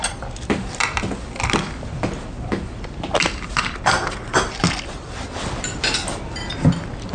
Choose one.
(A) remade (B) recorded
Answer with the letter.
B